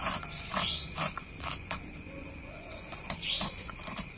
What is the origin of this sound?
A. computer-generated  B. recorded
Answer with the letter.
A